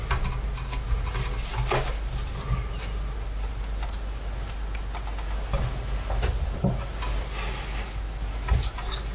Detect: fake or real real